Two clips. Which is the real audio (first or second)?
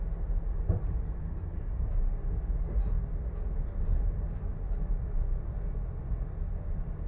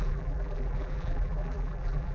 first